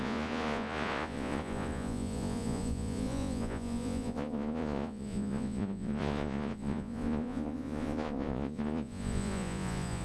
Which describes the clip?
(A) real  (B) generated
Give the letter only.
B